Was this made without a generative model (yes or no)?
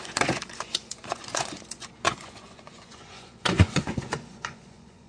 no